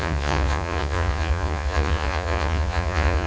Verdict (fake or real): fake